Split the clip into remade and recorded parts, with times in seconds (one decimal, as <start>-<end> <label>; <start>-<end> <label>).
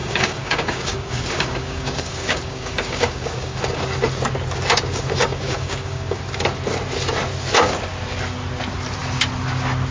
0.0-3.8 remade; 3.8-4.9 recorded; 4.9-6.2 remade; 6.2-9.9 recorded